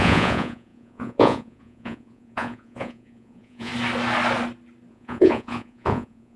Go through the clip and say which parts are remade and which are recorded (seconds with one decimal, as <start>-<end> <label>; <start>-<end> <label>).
0.0-3.7 remade; 3.7-4.9 recorded; 4.9-6.4 remade